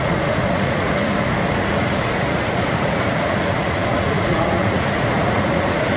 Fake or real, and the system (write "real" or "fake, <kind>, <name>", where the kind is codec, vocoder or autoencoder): fake, vocoder, Vocos